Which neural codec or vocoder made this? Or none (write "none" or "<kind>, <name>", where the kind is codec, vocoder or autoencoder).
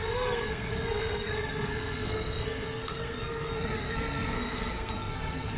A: codec, SNAC